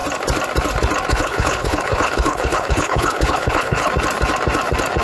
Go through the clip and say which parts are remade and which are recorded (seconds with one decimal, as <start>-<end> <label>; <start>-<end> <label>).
0.0-1.1 recorded; 1.1-3.9 remade; 3.9-5.0 recorded